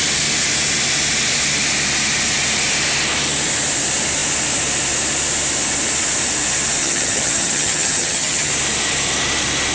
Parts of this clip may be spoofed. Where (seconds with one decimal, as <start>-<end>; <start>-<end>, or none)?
6.8-8.5